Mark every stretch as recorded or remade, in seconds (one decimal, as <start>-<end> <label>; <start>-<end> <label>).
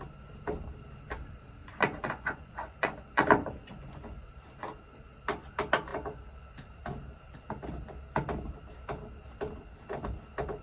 0.0-1.6 recorded; 1.6-4.3 remade; 4.3-10.6 recorded